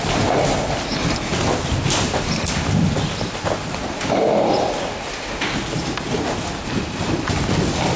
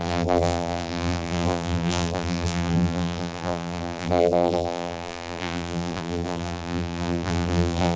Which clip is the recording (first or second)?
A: first